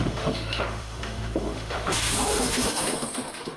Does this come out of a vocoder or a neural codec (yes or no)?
yes